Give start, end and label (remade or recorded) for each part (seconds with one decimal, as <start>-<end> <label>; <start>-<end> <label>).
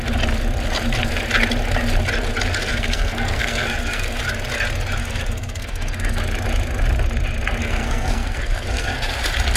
0.0-2.7 recorded; 2.7-4.2 remade; 4.2-5.0 recorded; 5.0-6.2 remade; 6.2-7.6 recorded; 7.6-9.1 remade; 9.1-9.6 recorded